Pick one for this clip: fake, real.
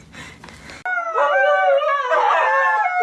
real